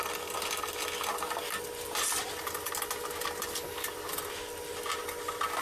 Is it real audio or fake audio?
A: real